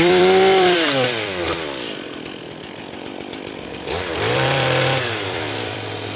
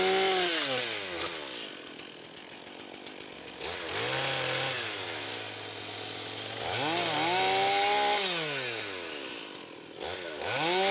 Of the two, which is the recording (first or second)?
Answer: second